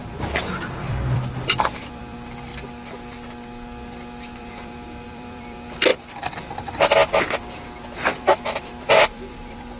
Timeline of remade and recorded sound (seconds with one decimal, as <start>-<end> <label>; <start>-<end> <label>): 0.0-2.5 remade; 2.5-4.4 recorded; 4.4-9.8 remade